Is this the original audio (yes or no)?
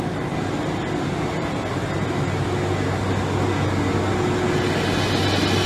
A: yes